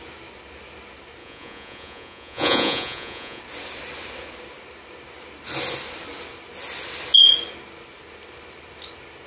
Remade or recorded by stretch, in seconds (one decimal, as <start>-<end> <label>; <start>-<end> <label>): 0.0-1.2 recorded; 1.2-3.4 remade; 3.4-9.3 recorded